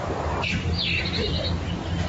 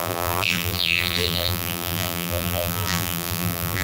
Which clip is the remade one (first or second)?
second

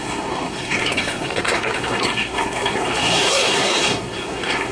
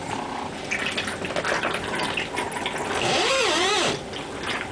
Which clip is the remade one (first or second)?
first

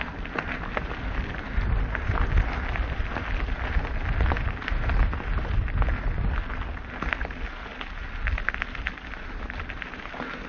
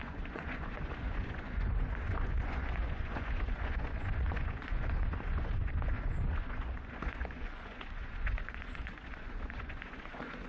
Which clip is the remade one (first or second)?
second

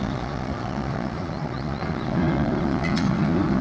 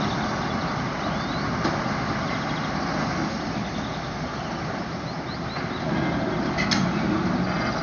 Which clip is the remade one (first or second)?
first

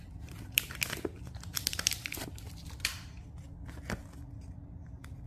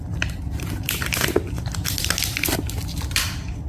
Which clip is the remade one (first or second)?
second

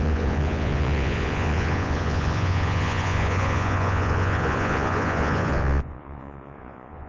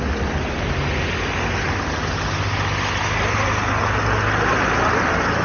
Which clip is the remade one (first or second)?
first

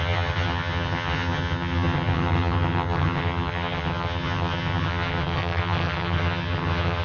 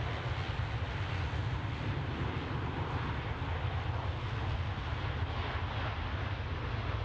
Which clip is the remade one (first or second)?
first